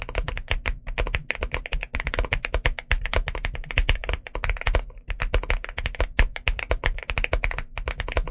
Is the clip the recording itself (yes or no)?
yes